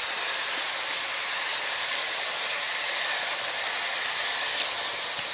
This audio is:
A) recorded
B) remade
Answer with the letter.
A